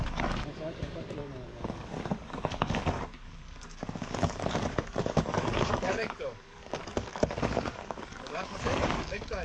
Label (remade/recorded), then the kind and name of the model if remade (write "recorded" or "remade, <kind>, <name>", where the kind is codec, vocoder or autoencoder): remade, codec, DAC